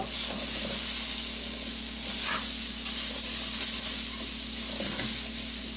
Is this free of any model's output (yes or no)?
yes